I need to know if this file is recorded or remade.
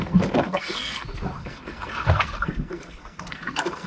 remade